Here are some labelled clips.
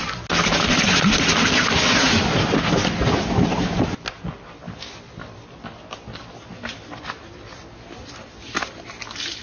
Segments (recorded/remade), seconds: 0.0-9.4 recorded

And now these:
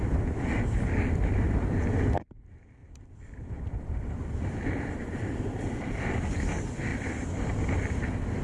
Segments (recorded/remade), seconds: 0.0-2.8 recorded; 2.8-6.0 remade; 6.0-6.9 recorded; 6.9-7.9 remade; 7.9-8.4 recorded

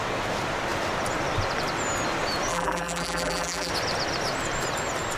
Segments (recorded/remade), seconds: 0.0-2.5 recorded; 2.5-3.7 remade; 3.7-5.2 recorded

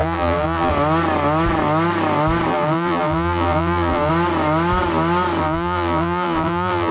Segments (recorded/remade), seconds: 0.0-0.7 remade; 0.7-2.5 recorded; 2.5-4.1 remade; 4.1-5.4 recorded; 5.4-6.9 remade

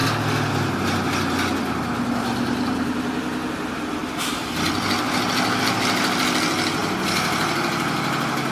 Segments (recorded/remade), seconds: 0.0-4.0 recorded; 4.0-4.8 remade; 4.8-6.8 recorded; 6.8-7.5 remade; 7.5-8.5 recorded